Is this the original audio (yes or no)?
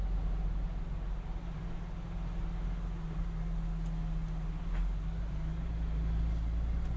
yes